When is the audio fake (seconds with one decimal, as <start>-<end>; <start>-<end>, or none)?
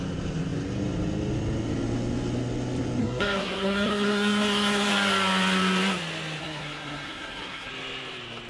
3.0-4.9; 6.4-7.7